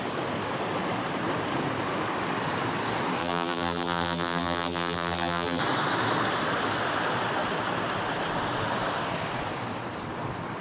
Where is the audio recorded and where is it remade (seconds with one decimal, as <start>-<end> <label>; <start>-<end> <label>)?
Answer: 0.0-3.2 recorded; 3.2-5.6 remade; 5.6-10.6 recorded